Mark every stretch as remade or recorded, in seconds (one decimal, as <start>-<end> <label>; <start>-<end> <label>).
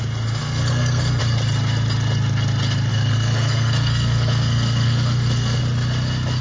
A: 0.0-0.4 recorded; 0.4-1.2 remade; 1.2-2.9 recorded; 2.9-5.6 remade; 5.6-6.4 recorded